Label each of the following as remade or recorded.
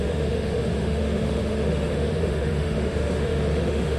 remade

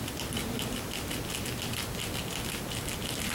recorded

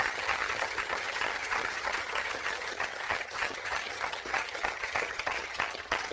remade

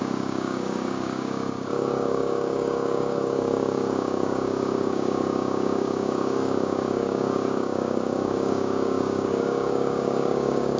remade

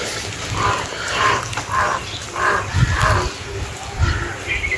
recorded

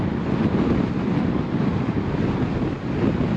recorded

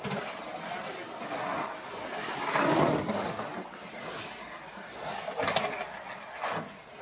recorded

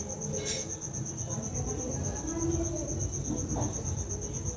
recorded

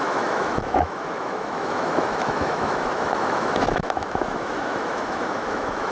remade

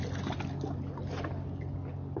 recorded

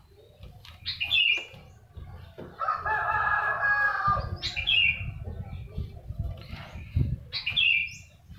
recorded